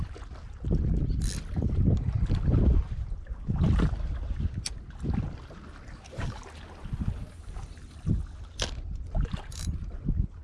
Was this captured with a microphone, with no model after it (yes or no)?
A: yes